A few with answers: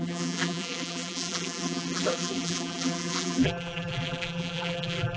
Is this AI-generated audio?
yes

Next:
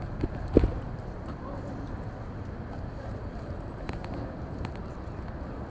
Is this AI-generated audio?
yes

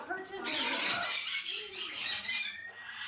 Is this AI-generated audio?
yes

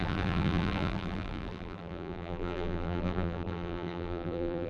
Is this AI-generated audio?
yes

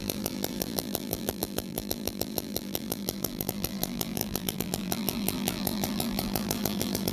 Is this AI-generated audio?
yes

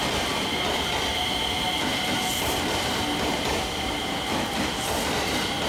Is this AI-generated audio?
no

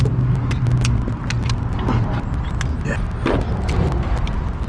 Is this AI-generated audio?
no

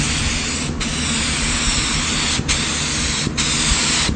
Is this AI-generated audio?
no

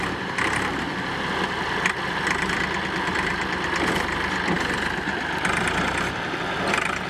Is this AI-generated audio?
yes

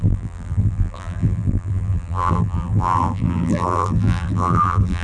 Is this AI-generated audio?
yes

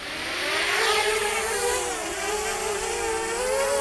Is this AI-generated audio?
no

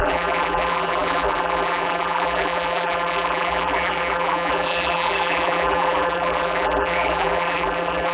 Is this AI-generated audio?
yes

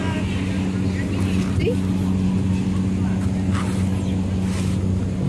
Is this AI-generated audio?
no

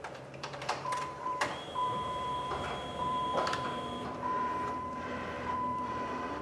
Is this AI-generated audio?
yes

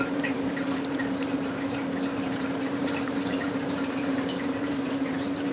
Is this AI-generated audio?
yes